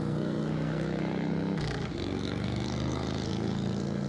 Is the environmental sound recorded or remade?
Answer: remade